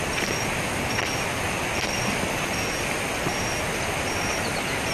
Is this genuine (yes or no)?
yes